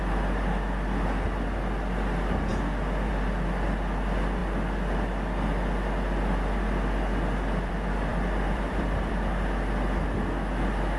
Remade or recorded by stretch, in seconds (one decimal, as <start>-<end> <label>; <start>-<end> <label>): 0.0-8.1 recorded; 8.1-9.1 remade; 9.1-11.0 recorded